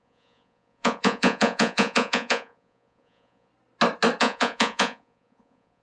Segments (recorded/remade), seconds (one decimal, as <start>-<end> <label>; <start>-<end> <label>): 0.0-3.5 remade; 3.5-4.2 recorded; 4.2-5.8 remade